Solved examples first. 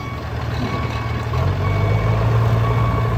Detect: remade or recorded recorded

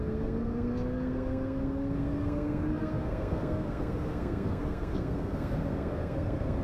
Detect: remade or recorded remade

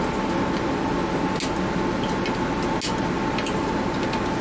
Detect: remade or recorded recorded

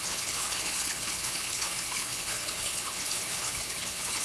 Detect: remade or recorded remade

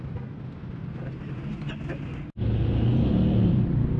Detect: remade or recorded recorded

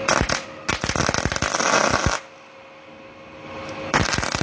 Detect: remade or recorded recorded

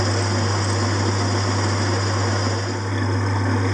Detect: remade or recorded recorded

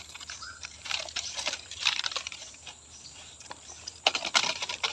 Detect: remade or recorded remade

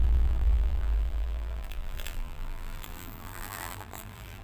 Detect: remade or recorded remade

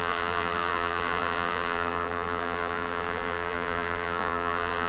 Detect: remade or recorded remade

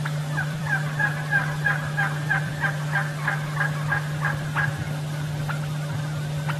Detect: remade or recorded remade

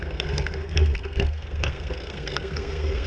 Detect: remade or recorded remade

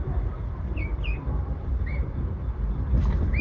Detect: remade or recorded recorded